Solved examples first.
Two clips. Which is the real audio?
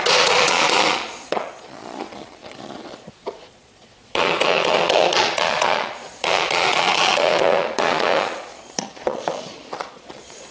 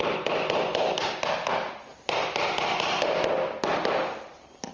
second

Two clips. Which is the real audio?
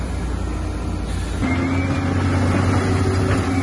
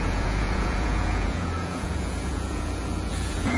first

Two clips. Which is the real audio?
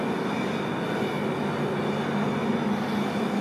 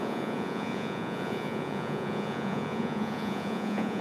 first